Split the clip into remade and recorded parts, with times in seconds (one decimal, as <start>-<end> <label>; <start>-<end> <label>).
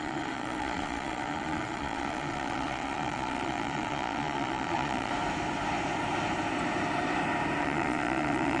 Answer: 0.0-5.1 remade; 5.1-7.6 recorded; 7.6-8.6 remade